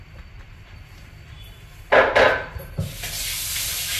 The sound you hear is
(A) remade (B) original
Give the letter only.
B